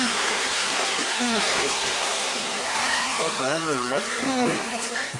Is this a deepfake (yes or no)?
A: yes